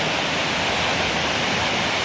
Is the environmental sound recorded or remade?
recorded